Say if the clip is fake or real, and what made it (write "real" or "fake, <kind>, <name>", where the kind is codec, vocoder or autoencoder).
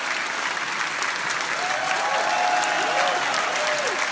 real